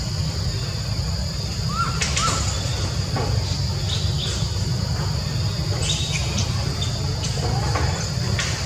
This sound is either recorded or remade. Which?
recorded